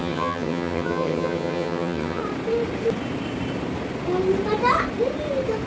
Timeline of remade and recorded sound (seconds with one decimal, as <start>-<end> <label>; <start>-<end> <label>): 0.0-2.2 remade; 2.2-5.7 recorded